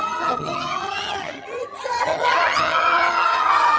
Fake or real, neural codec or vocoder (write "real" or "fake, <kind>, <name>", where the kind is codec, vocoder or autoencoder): fake, vocoder, HiFi-GAN